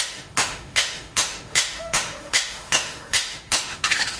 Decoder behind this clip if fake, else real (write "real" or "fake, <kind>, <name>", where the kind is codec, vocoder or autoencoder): fake, autoencoder, DAC-VAE